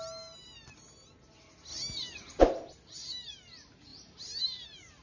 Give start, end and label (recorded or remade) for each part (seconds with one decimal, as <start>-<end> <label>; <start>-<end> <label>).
0.0-5.0 recorded